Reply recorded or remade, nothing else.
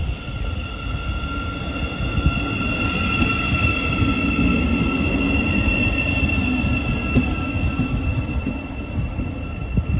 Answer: recorded